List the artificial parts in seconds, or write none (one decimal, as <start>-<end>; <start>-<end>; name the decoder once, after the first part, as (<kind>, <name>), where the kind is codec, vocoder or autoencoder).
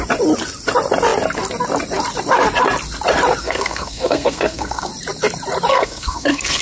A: 3.4-4.9 (codec, SNAC); 5.7-6.6